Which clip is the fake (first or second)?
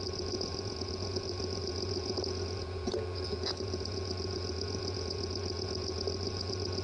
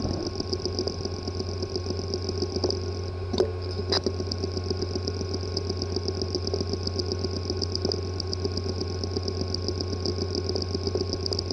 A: first